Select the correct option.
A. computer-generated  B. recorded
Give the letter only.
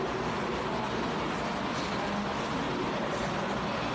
B